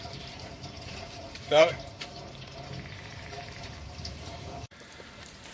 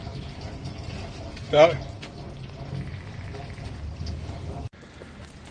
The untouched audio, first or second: second